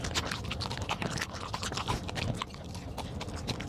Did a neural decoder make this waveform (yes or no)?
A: no